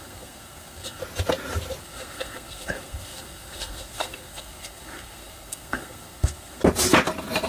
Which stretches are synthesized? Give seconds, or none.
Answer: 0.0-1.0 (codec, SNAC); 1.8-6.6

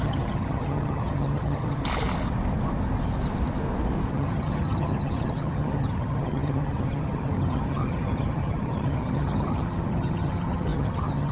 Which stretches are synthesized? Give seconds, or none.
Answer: 0.0-1.8 (vocoder, HiFi-GAN); 4.1-11.3

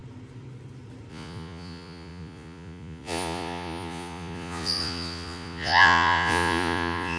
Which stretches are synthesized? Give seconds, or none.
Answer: 1.1-7.2 (vocoder, Vocos)

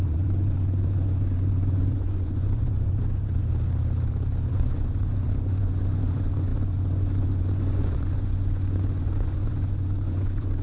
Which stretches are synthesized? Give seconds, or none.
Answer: 0.0-3.4 (vocoder, Vocos); 4.5-10.6

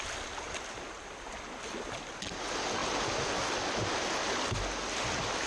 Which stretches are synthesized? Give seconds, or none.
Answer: none

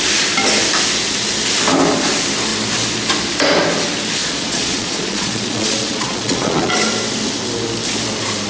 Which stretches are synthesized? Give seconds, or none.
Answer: 4.2-6.7 (vocoder, Vocos)

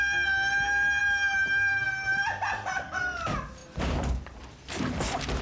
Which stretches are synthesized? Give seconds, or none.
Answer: none